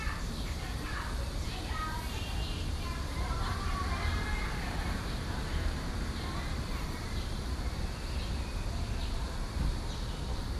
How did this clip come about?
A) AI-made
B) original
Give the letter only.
A